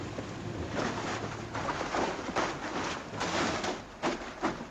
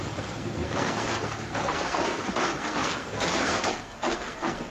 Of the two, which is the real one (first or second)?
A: first